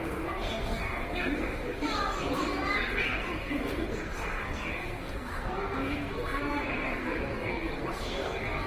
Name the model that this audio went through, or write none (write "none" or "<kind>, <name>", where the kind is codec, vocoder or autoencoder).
codec, SNAC